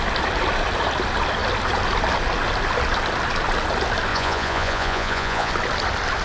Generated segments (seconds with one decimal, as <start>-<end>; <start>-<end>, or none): 4.1-5.5